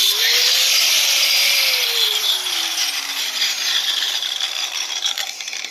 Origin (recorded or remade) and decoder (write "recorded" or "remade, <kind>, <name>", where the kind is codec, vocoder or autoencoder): remade, vocoder, BigVGAN v2